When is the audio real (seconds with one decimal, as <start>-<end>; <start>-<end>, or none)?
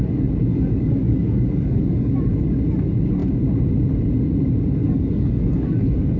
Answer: 0.0-0.5; 2.1-4.8